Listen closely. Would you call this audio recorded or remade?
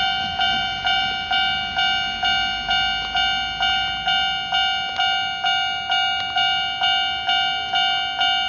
recorded